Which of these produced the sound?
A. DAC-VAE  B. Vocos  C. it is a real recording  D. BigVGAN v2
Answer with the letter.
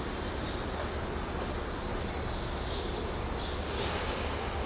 C